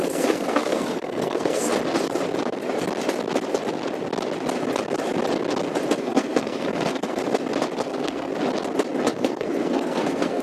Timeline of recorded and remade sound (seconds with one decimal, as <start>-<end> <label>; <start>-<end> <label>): 0.0-1.7 remade; 1.7-6.0 recorded; 6.0-7.2 remade; 7.2-7.8 recorded; 7.8-8.3 remade; 8.3-9.1 recorded; 9.1-10.4 remade